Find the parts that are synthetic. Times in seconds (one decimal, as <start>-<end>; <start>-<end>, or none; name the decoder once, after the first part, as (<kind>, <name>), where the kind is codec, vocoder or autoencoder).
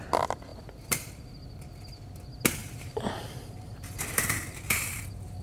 0.5-1.3 (vocoder, BigVGAN v2); 2.6-5.4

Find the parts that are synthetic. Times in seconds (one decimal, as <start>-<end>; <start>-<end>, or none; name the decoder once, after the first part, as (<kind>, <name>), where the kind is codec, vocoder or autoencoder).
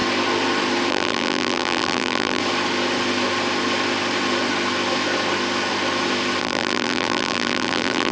0.9-2.4 (vocoder, BigVGAN v2); 6.4-8.1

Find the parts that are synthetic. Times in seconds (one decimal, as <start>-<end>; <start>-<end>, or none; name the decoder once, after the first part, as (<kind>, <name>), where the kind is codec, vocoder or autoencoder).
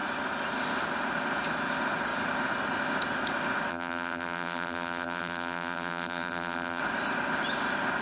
3.7-6.8 (vocoder, BigVGAN v2)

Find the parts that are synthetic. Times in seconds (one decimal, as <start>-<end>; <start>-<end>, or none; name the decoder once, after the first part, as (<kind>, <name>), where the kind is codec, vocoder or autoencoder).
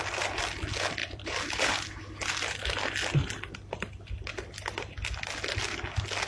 1.0-2.0 (vocoder, BigVGAN v2)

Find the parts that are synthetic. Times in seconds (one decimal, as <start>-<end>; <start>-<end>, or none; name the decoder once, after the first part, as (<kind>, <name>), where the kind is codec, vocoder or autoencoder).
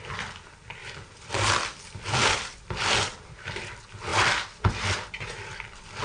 0.8-3.1 (vocoder, BigVGAN v2)